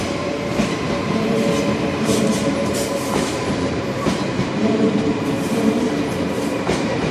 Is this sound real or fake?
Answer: fake